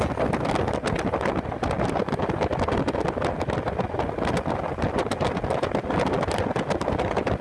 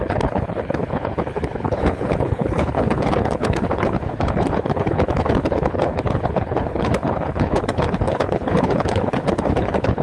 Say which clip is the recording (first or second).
first